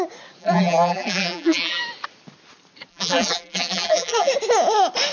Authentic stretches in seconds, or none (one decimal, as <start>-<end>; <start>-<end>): 0.0-0.4; 1.8-2.9; 4.3-5.1